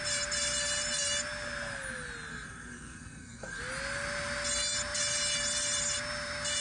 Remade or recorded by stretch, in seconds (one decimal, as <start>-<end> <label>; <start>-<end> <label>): 0.0-2.3 recorded; 2.3-3.6 remade; 3.6-6.6 recorded